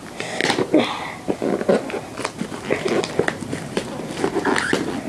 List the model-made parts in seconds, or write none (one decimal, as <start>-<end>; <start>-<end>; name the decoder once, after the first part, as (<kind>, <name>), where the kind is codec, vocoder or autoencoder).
none